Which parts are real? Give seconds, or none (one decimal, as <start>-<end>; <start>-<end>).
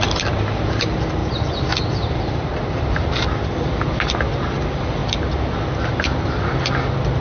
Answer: 0.0-1.2; 3.5-7.2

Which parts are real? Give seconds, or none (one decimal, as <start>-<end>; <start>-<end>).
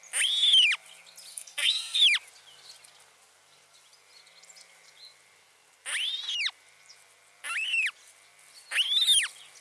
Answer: 0.0-1.3; 2.0-9.6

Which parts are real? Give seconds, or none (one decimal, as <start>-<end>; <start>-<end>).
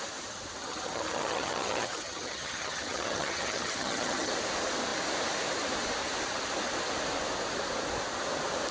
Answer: 0.0-0.6; 4.3-8.7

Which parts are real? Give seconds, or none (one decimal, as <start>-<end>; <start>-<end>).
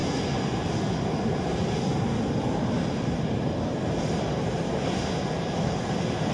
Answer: 0.0-6.3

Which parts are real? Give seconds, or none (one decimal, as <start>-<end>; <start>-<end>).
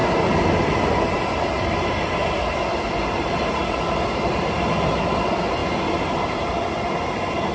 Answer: 0.0-7.5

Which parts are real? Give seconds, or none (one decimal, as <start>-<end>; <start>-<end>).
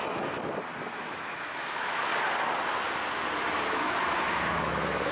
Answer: 0.0-1.0; 2.1-3.7